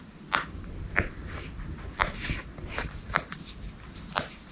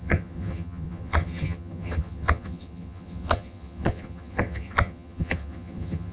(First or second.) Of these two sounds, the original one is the first